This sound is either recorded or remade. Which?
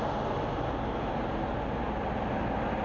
recorded